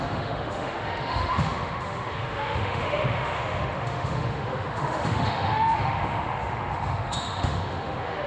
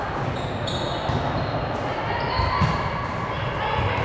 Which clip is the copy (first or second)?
first